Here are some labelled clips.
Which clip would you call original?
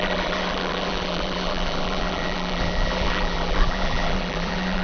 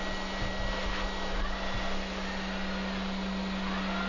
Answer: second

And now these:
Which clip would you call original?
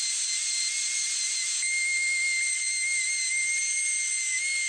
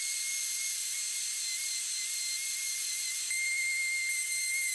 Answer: first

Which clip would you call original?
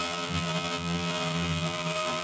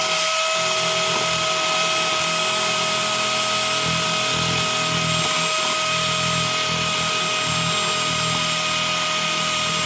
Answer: second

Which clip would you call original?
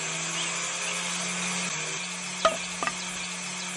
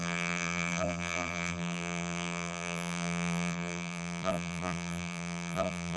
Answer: first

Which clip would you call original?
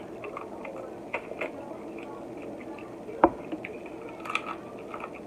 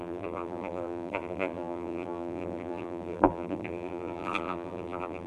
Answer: first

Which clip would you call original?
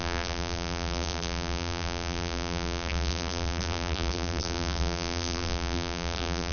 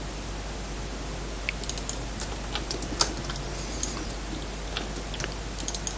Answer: second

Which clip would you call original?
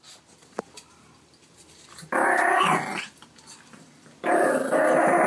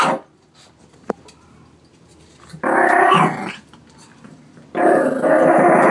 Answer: second